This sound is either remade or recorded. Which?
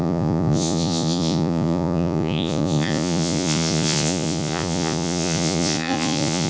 remade